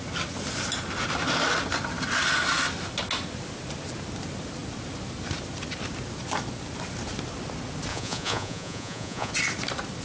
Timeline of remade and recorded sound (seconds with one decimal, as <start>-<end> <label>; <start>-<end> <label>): 0.0-7.9 recorded; 7.9-9.3 remade; 9.3-10.0 recorded